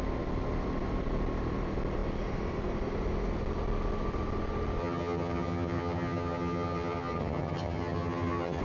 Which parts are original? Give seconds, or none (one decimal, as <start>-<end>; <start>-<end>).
0.0-4.8